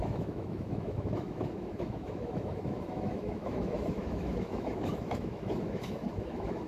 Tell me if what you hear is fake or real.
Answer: fake